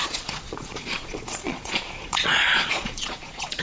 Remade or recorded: remade